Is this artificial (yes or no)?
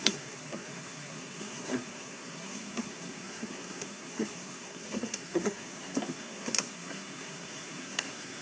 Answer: yes